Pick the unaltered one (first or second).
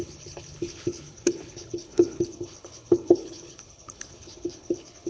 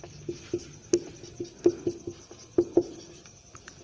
second